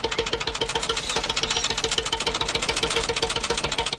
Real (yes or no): yes